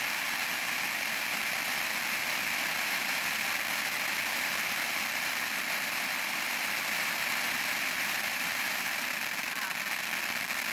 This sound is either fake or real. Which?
fake